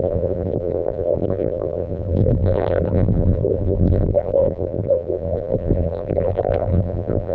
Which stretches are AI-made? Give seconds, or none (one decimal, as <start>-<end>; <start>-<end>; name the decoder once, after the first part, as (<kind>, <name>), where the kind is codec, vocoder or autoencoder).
0.0-7.3 (vocoder, BigVGAN v2)